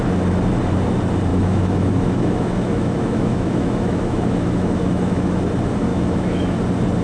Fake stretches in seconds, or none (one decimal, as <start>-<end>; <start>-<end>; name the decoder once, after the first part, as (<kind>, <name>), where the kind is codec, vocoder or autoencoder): 1.3-5.4 (autoencoder, DAC-VAE); 5.9-6.6